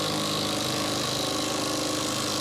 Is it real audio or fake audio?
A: real